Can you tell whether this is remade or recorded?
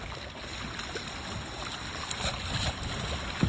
recorded